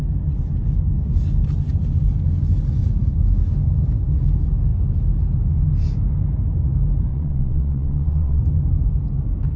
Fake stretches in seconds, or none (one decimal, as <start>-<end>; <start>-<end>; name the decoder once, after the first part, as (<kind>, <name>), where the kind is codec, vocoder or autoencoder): 7.1-8.4 (vocoder, WaveNeXt)